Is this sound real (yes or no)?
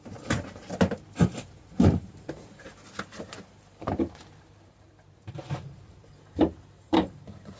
no